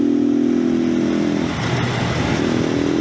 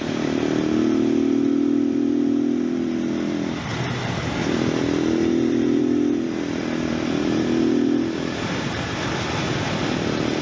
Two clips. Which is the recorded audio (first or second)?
first